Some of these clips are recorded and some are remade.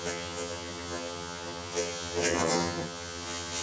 remade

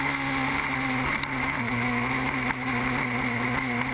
recorded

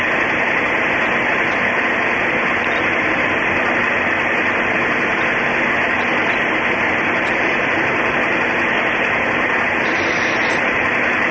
recorded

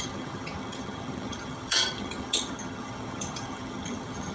remade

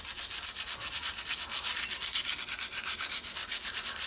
recorded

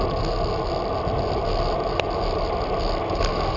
recorded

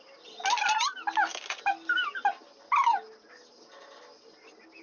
recorded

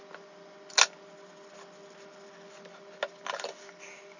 recorded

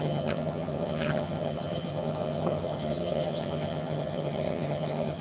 remade